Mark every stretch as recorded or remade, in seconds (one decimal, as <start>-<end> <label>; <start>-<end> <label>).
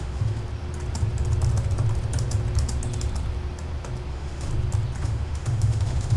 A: 0.0-0.4 remade; 0.4-4.1 recorded; 4.1-4.5 remade; 4.5-5.0 recorded; 5.0-6.2 remade